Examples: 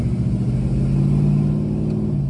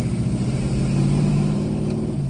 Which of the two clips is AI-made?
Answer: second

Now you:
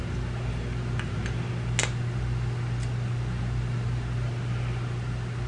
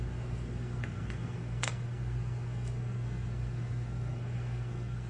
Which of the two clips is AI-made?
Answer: second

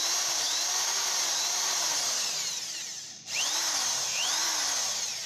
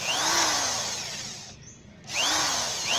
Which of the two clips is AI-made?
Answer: first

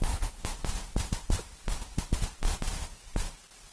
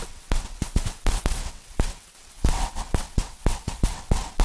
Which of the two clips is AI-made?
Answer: second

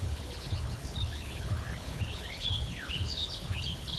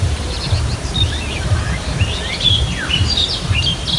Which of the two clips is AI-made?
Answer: first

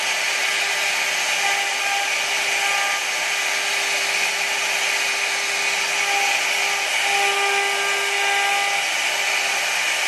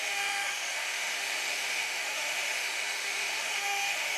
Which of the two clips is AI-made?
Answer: second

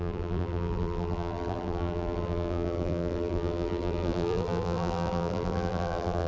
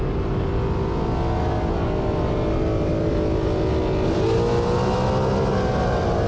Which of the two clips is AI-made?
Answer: first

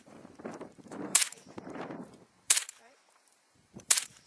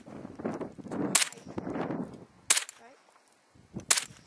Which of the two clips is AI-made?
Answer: first